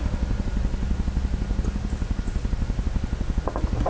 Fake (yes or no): no